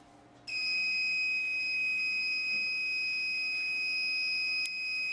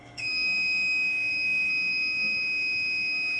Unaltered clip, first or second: first